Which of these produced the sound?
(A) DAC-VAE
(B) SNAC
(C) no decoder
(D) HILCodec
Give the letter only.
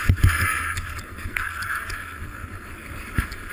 B